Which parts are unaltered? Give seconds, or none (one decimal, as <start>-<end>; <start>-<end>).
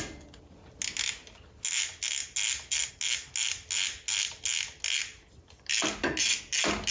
0.0-6.9